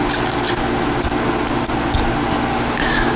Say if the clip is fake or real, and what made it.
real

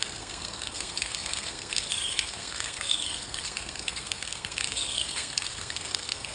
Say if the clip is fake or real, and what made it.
fake, codec, SNAC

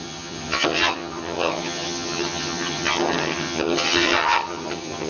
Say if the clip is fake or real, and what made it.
fake, vocoder, HiFi-GAN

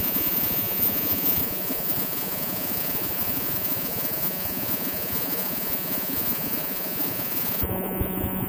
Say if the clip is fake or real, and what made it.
fake, vocoder, Vocos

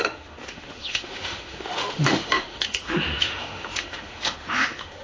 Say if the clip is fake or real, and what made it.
fake, autoencoder, DAC-VAE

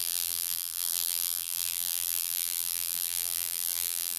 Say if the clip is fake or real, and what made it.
fake, vocoder, BigVGAN v2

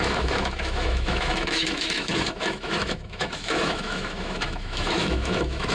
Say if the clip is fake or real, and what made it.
fake, autoencoder, DAC-VAE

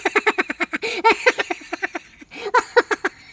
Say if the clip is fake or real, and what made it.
real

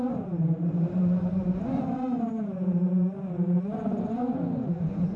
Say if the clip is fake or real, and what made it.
fake, vocoder, BigVGAN v2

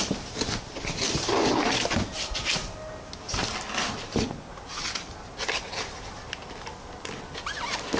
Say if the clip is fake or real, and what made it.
real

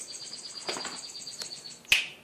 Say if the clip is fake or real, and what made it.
real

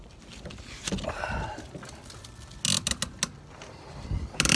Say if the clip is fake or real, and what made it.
real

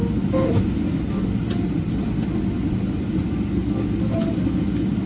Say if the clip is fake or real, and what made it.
real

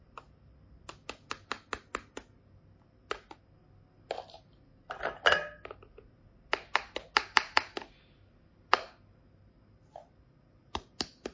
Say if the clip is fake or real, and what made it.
real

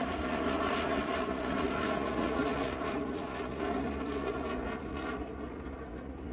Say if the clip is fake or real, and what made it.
fake, vocoder, Vocos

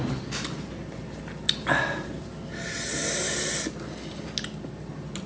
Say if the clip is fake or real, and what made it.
real